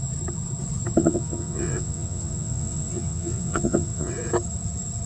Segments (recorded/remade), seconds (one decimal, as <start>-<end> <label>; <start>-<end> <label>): 0.0-1.0 recorded; 1.0-4.1 remade; 4.1-5.1 recorded